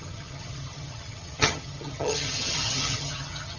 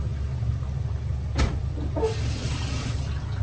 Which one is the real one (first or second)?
second